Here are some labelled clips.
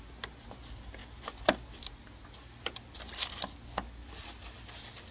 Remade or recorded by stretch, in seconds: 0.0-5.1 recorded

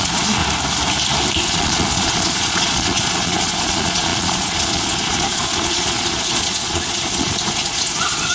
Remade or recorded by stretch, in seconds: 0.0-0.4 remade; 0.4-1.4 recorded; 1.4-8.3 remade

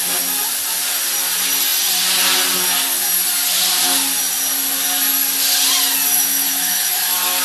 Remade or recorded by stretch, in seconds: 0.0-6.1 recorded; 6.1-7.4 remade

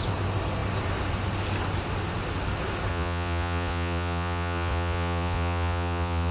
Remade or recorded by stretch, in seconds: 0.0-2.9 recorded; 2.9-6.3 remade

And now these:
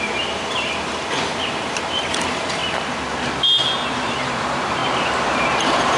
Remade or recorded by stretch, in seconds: 0.0-2.6 remade; 2.6-3.9 recorded; 3.9-4.8 remade; 4.8-5.3 recorded; 5.3-6.0 remade

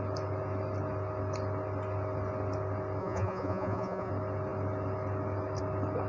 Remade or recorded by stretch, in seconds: 0.0-3.0 recorded; 3.0-4.1 remade; 4.1-6.1 recorded